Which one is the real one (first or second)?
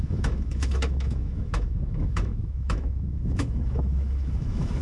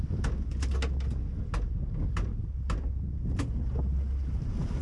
second